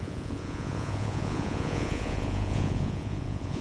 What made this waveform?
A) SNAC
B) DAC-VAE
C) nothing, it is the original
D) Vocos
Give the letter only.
D